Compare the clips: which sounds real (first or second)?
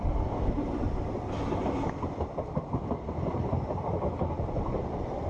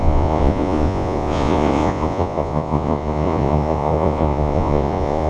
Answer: first